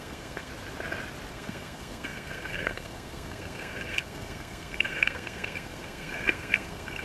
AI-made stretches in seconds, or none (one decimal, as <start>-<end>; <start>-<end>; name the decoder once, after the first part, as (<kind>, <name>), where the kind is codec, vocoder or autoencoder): 0.0-0.5 (codec, SNAC); 1.3-7.0